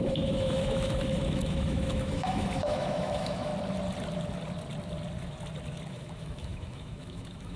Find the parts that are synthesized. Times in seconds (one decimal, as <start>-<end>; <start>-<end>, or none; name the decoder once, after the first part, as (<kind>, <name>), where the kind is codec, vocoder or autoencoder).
0.0-3.5 (autoencoder, DAC-VAE); 5.9-7.6